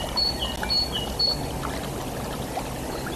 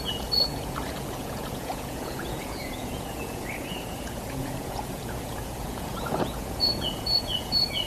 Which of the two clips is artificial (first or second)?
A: second